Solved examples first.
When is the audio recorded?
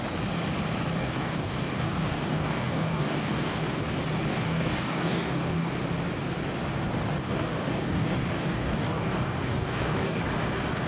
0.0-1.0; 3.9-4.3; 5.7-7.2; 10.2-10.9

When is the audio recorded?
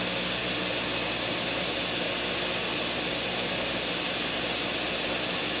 0.0-5.6